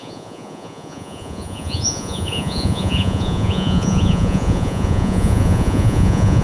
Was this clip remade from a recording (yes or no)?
yes